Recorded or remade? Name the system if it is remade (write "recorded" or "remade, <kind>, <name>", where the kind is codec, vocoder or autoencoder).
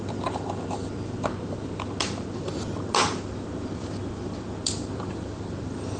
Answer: recorded